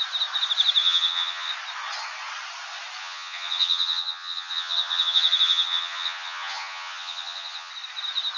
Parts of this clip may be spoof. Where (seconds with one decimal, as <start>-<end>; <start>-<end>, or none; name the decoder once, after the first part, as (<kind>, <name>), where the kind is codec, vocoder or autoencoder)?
0.8-1.5 (vocoder, HiFi-GAN); 3.0-7.7